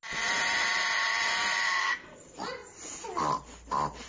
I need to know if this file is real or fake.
real